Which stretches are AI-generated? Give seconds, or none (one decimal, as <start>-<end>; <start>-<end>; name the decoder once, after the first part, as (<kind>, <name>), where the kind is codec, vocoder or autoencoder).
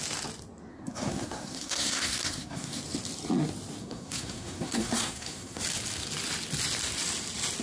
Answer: 0.7-2.8 (codec, SNAC); 3.8-5.6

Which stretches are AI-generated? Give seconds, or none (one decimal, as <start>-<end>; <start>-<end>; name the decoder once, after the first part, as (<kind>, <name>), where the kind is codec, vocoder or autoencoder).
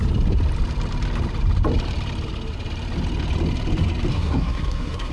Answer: 4.1-5.1 (codec, SNAC)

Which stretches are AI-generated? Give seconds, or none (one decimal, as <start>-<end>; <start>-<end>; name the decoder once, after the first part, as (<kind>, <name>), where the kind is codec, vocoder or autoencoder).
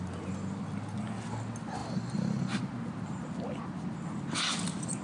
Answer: none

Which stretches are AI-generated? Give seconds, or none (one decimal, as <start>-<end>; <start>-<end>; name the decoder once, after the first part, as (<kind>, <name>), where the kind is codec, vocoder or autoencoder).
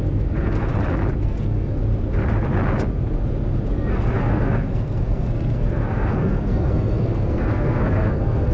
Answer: 0.0-0.7 (codec, SNAC); 1.2-1.8; 3.7-8.5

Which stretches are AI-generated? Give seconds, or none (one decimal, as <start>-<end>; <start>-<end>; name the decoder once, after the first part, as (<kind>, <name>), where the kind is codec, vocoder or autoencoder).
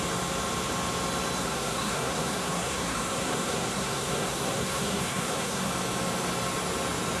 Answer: 1.4-5.7 (codec, SNAC)